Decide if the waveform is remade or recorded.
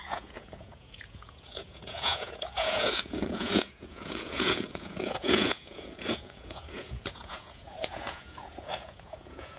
remade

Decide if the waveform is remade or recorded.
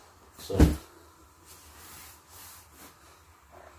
recorded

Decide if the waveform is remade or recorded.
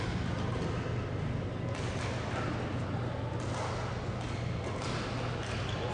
recorded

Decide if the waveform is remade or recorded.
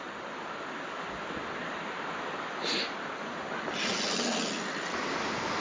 recorded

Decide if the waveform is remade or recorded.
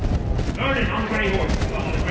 recorded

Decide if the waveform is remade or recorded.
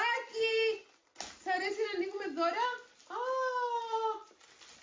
recorded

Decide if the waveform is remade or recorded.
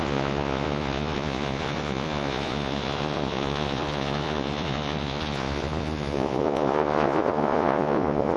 remade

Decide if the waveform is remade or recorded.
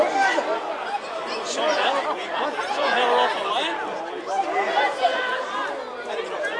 recorded